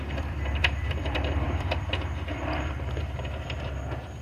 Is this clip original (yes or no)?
no